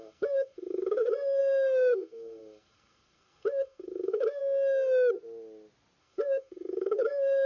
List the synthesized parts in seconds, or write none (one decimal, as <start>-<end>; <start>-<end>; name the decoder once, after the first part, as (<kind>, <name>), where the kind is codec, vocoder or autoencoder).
0.0-4.4 (codec, SNAC); 6.0-7.5